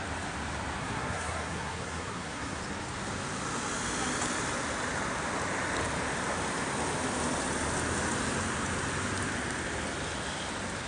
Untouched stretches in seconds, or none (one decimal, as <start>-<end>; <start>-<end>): 0.0-0.8; 2.6-10.9

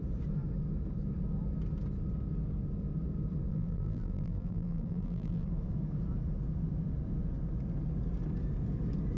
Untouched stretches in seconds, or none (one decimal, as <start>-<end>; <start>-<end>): 0.0-3.5; 5.5-9.2

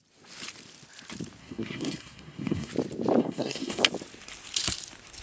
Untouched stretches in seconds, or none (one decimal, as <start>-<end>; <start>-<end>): 0.0-1.4; 2.7-3.2; 3.8-5.2

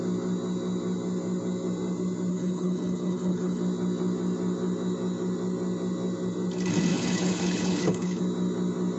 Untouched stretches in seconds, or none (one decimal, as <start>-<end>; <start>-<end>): 0.0-2.3; 3.6-6.9; 8.2-9.0

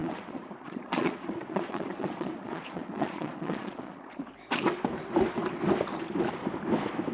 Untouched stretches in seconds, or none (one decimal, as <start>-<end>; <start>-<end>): 4.2-7.1